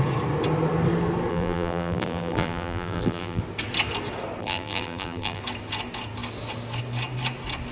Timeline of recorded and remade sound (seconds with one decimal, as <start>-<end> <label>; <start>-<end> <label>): 0.0-1.3 recorded; 1.3-3.4 remade; 3.4-4.4 recorded; 4.4-5.4 remade; 5.4-7.7 recorded